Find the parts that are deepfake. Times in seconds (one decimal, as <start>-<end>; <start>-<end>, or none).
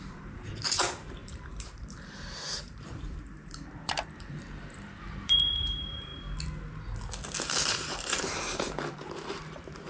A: 0.0-6.1; 7.4-9.9